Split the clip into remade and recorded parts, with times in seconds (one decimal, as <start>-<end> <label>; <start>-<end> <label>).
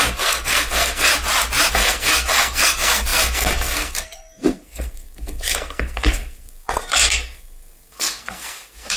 0.0-1.1 remade; 1.1-1.7 recorded; 1.7-9.0 remade